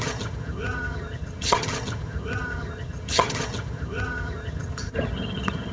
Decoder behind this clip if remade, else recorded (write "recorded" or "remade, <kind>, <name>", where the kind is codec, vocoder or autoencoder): remade, vocoder, HiFi-GAN